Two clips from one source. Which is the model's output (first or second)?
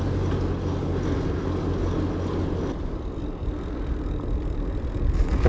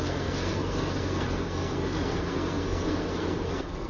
second